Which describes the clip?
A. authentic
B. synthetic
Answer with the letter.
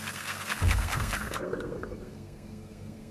B